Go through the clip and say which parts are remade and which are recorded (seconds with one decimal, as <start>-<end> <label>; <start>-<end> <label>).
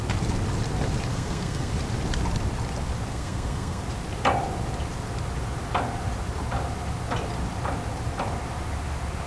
0.0-1.1 recorded; 1.1-1.7 remade; 1.7-3.1 recorded; 3.1-3.8 remade; 3.8-9.3 recorded